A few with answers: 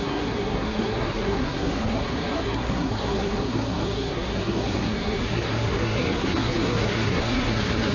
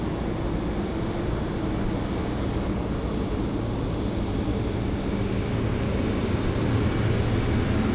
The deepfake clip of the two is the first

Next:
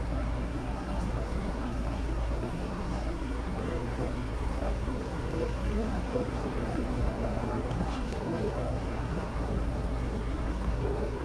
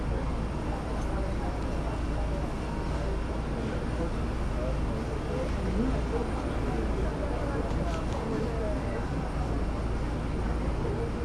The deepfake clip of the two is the first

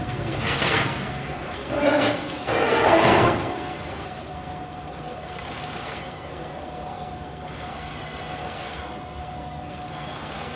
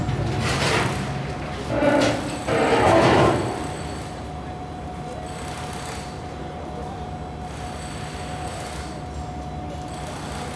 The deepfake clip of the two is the first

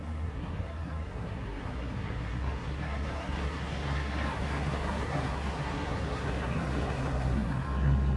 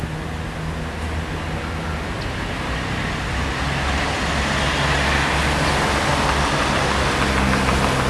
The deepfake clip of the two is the first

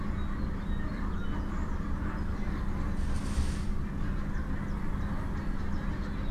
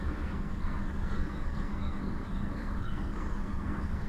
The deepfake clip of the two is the second